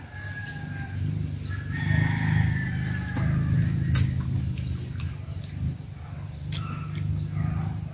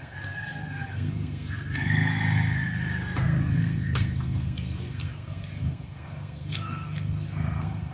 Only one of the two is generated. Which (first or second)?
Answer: second